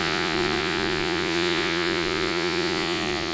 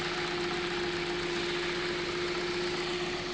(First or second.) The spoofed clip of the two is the first